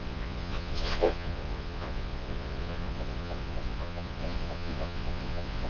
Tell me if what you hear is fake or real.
fake